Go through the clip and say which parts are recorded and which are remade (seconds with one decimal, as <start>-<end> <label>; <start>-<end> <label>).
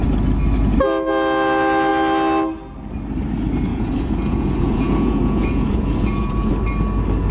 0.0-3.7 recorded; 3.7-6.5 remade; 6.5-7.3 recorded